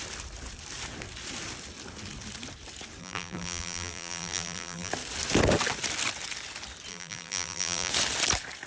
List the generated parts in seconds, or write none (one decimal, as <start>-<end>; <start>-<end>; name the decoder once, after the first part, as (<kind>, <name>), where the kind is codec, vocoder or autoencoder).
3.0-4.9 (vocoder, BigVGAN v2); 6.9-7.9